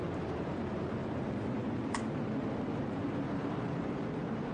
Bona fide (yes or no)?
no